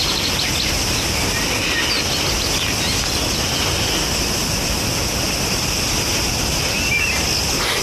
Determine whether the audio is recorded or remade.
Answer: recorded